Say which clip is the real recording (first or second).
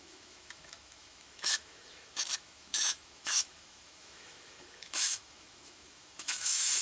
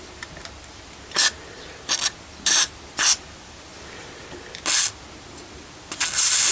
second